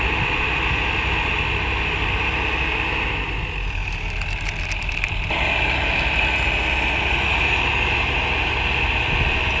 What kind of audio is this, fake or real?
real